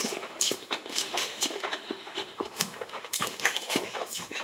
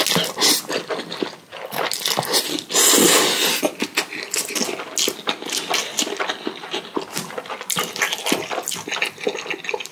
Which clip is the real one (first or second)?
second